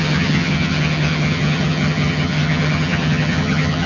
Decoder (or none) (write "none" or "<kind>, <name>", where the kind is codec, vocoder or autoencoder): vocoder, HiFi-GAN